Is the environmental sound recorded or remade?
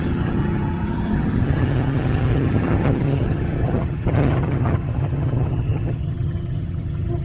remade